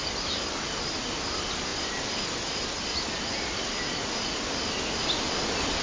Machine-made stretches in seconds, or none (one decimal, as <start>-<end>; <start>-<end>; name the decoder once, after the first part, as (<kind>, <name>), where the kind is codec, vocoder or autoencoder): none